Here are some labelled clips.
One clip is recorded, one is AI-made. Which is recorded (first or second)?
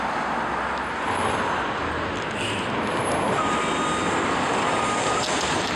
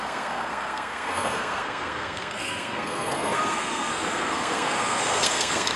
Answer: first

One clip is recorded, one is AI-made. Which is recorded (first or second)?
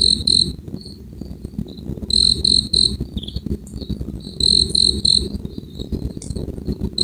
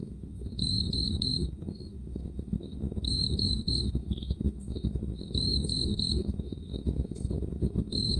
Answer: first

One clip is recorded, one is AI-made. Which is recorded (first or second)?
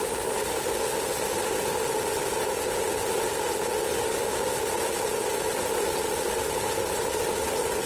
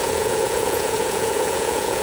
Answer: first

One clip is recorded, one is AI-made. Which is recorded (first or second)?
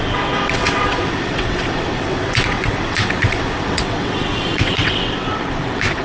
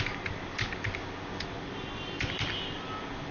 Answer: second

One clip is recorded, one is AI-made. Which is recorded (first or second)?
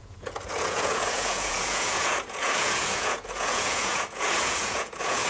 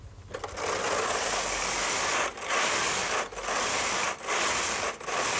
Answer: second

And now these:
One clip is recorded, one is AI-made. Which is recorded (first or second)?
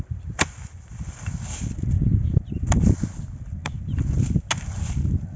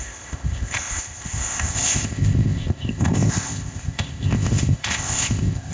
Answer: first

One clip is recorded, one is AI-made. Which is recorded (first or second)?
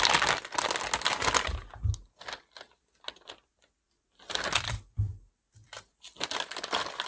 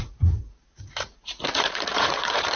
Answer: first